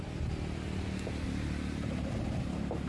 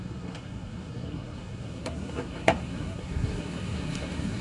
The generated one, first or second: second